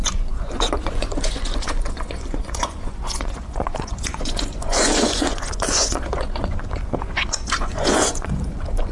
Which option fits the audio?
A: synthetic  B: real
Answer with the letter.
A